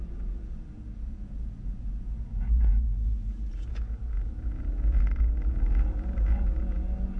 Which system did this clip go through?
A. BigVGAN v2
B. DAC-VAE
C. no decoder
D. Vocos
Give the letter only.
D